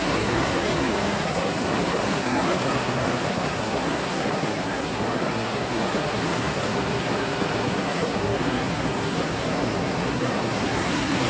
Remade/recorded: remade